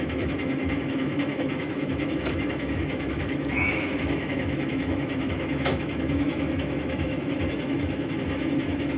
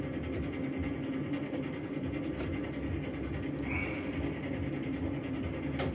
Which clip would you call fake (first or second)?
first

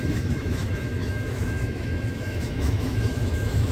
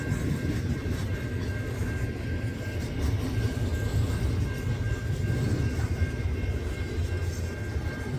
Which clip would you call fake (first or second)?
first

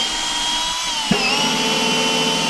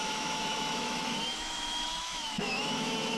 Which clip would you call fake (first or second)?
second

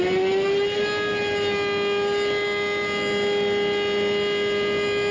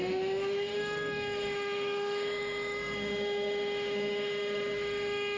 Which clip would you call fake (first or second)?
second